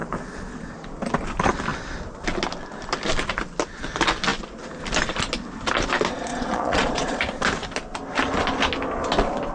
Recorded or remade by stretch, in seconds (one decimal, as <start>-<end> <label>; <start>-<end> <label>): 0.0-6.3 recorded; 6.3-7.2 remade; 7.2-9.5 recorded